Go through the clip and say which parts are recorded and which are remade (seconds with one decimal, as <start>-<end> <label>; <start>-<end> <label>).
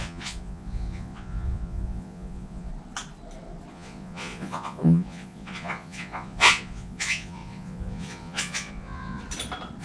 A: 0.0-2.7 remade; 2.7-3.7 recorded; 3.7-9.2 remade; 9.2-9.8 recorded